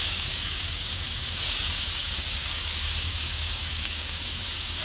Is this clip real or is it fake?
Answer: fake